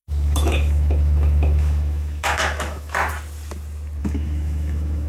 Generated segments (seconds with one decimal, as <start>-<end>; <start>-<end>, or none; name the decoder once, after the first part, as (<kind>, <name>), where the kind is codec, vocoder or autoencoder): 0.0-3.1 (autoencoder, DAC-VAE); 4.0-5.1